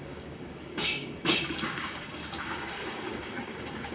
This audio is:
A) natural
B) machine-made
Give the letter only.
B